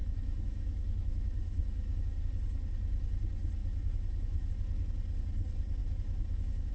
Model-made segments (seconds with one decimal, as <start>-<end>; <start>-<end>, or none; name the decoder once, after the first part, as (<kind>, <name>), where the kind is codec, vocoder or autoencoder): 0.0-2.2 (autoencoder, DAC-VAE); 3.6-4.5; 5.8-6.7